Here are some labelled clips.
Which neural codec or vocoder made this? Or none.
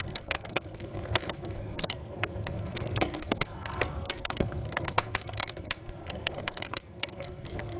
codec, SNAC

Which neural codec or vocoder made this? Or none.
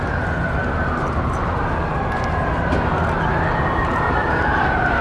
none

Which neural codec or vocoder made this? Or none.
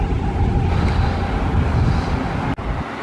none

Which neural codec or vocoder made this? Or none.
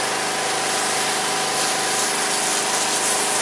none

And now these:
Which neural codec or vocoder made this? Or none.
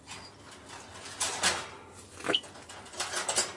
none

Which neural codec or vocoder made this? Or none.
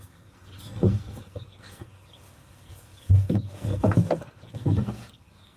codec, SNAC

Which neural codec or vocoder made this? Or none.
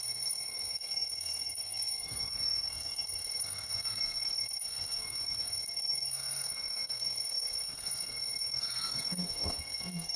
codec, SNAC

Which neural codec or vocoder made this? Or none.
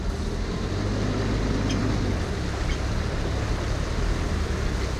none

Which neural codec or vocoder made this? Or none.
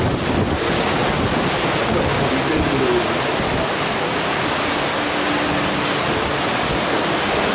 none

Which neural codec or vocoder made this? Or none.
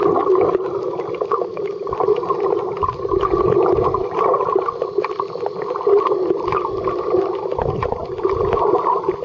none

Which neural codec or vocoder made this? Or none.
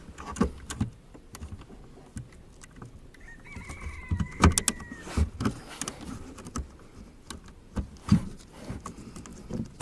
none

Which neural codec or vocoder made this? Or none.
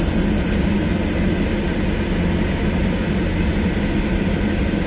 none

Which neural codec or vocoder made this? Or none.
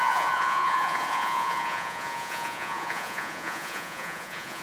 vocoder, Vocos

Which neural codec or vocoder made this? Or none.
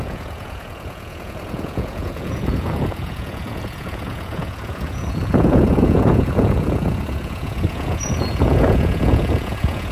vocoder, Vocos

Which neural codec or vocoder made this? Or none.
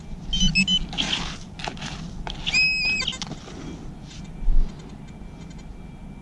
none